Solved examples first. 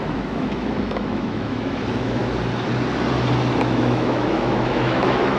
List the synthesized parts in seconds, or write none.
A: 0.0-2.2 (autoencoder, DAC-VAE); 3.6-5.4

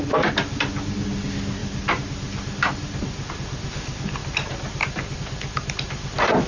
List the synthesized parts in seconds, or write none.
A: none

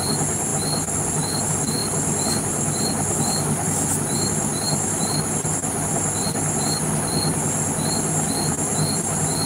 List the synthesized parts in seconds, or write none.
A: none

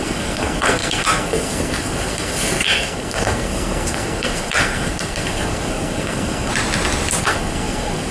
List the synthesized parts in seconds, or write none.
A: 0.0-6.5 (codec, SNAC); 7.2-8.1

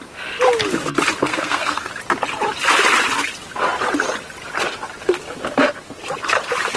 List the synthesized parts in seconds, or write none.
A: 1.3-1.9 (codec, SNAC)

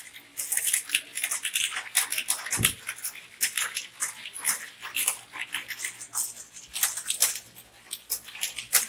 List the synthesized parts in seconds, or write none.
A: none